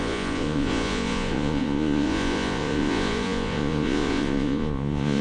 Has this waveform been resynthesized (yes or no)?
yes